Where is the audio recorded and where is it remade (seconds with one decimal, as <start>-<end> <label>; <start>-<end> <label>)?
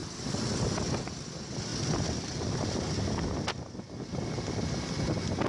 0.0-5.5 recorded